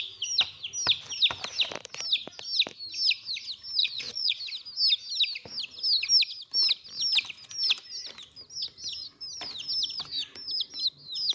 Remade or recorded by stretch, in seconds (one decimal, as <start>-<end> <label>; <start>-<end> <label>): 0.0-3.8 recorded; 3.8-4.4 remade; 4.4-11.3 recorded